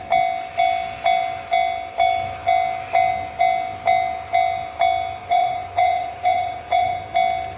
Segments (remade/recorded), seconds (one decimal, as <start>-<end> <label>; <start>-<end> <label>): 0.0-5.2 recorded; 5.2-7.0 remade; 7.0-7.6 recorded